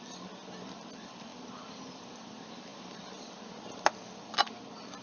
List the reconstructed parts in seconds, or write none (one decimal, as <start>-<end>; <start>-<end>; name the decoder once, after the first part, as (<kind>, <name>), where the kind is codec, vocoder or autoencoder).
none